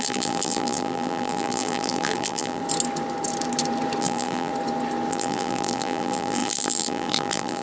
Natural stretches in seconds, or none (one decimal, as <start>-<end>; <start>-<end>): 2.6-4.0; 4.5-5.1